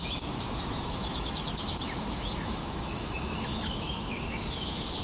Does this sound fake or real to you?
fake